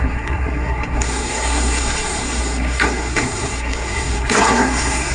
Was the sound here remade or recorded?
remade